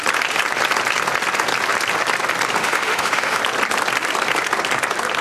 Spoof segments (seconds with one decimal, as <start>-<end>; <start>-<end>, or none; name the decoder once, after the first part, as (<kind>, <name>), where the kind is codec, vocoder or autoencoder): 2.6-3.4 (autoencoder, DAC-VAE)